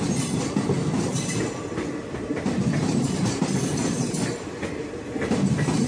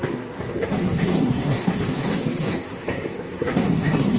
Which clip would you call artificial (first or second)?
second